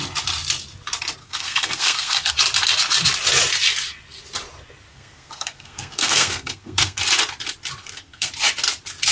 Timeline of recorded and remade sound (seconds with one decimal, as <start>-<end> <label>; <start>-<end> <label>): 0.0-1.2 recorded; 1.2-2.3 remade; 2.3-4.9 recorded; 4.9-7.0 remade; 7.0-7.8 recorded; 7.8-8.3 remade; 8.3-9.1 recorded